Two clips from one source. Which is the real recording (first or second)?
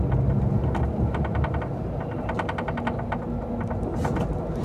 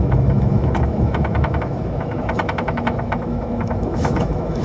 first